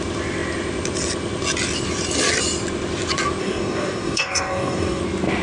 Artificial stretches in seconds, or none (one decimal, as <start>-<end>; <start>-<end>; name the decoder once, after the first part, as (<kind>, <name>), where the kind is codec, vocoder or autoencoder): 3.4-5.0 (codec, DAC)